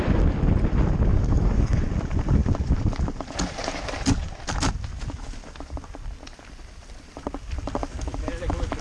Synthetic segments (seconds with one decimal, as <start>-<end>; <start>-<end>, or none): 1.1-1.8